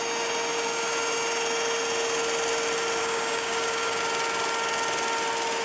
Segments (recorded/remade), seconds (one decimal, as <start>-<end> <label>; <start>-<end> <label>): 0.0-3.0 recorded; 3.0-4.0 remade; 4.0-5.6 recorded